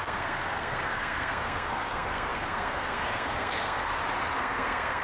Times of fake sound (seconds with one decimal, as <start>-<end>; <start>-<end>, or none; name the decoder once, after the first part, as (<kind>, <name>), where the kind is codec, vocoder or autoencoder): 0.0-3.9 (codec, SNAC); 4.4-5.0